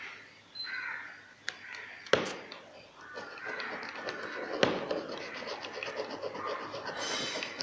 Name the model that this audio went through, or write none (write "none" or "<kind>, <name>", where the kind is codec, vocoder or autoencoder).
none